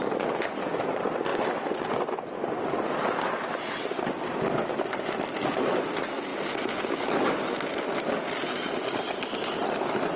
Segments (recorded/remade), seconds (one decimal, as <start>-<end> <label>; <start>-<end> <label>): 0.0-1.3 recorded; 1.3-1.9 remade; 1.9-10.2 recorded